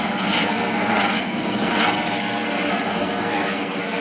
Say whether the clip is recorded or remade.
remade